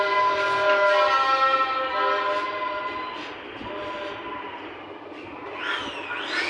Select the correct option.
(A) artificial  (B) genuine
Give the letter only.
B